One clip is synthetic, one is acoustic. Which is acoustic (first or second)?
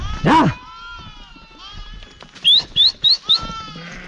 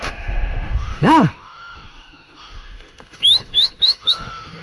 first